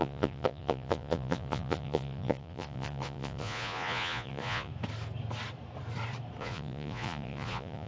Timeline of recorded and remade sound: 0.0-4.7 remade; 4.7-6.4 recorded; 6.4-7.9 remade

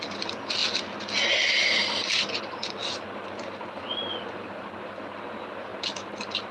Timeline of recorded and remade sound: 0.0-6.5 recorded